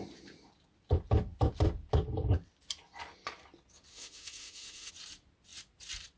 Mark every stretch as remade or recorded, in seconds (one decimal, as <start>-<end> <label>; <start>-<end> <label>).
0.0-3.9 recorded; 3.9-4.9 remade; 4.9-6.2 recorded